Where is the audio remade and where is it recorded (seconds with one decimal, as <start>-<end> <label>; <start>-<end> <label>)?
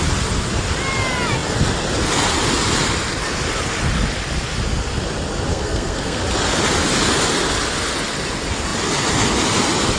0.0-5.5 recorded; 5.5-6.2 remade; 6.2-10.0 recorded